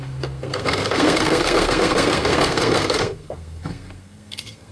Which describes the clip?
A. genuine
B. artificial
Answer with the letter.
B